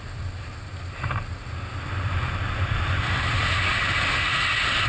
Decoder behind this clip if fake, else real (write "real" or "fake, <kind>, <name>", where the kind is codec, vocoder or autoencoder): real